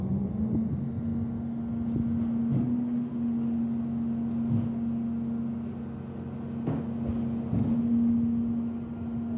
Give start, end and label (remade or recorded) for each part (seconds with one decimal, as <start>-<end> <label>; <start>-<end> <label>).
0.0-9.4 recorded